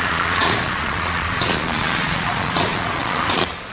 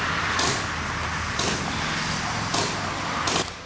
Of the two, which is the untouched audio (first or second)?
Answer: second